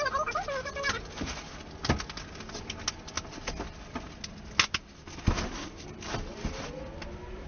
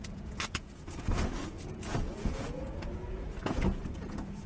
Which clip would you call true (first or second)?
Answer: first